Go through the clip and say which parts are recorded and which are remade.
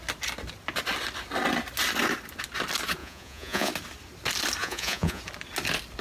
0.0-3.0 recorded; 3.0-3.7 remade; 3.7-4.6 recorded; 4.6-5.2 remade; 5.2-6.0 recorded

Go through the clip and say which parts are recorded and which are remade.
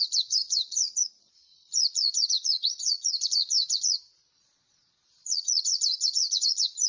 0.0-6.9 remade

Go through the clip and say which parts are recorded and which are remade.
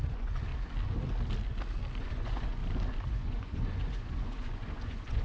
0.0-0.5 remade; 0.5-2.0 recorded; 2.0-2.6 remade; 2.6-3.1 recorded; 3.1-5.2 remade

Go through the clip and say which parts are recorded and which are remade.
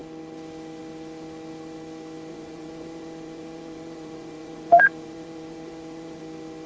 0.0-2.3 recorded; 2.3-6.2 remade; 6.2-6.7 recorded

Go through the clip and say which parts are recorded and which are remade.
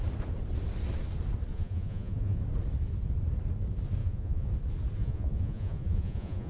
0.0-1.5 recorded; 1.5-2.4 remade; 2.4-4.0 recorded; 4.0-4.5 remade; 4.5-5.0 recorded; 5.0-6.5 remade